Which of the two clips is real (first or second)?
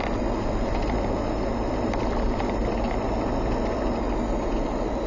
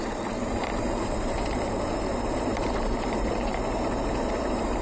first